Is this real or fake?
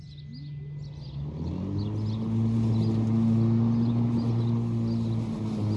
real